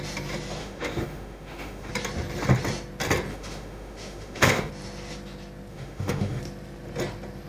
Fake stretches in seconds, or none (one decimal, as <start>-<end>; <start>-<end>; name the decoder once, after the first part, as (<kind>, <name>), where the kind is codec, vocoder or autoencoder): 0.6-1.9 (autoencoder, DAC-VAE); 3.3-4.7; 5.7-6.4